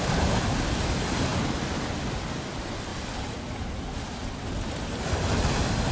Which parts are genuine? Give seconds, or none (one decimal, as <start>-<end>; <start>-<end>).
0.0-4.2; 5.1-5.9